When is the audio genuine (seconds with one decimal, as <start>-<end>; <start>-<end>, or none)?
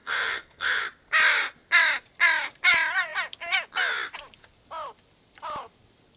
0.8-6.2